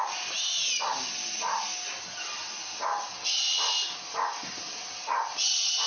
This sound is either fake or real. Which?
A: real